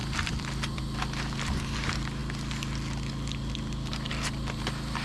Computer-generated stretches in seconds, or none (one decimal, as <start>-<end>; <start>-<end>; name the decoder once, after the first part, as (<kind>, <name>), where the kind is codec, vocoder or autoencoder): 0.0-0.8 (vocoder, BigVGAN v2)